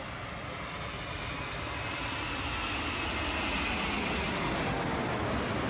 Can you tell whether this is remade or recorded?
recorded